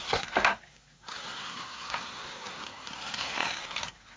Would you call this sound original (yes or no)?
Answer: no